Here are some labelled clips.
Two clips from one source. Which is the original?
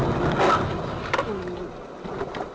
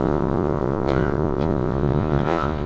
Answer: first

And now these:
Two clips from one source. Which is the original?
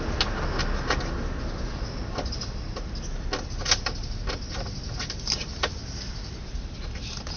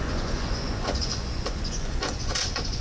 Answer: first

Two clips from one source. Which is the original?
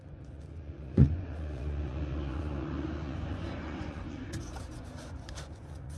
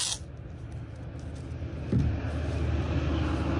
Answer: second